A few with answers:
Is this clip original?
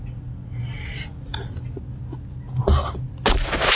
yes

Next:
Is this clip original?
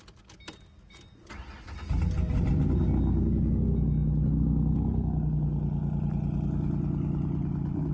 yes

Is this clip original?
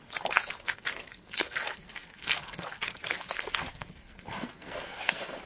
no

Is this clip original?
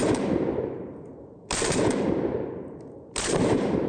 yes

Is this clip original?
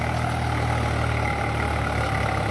yes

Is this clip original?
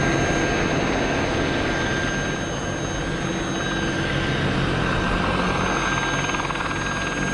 yes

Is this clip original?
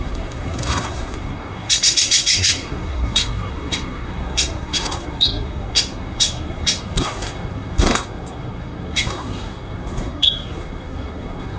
no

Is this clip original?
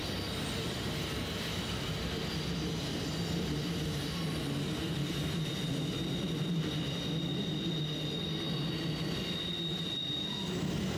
yes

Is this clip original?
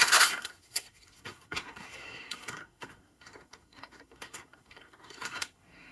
no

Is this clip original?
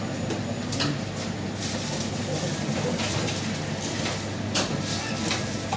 yes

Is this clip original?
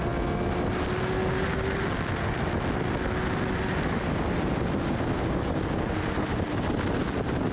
yes